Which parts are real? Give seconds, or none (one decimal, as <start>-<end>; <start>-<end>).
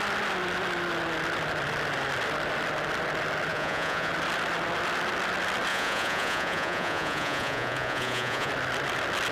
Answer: 0.0-3.5; 4.1-5.7; 8.5-9.3